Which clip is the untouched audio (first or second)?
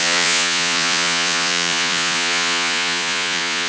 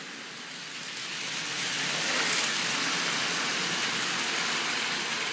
second